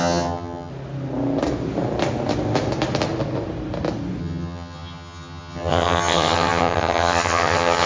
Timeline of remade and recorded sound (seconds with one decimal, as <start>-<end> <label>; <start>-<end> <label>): 0.0-0.7 remade; 0.7-4.2 recorded; 4.2-7.9 remade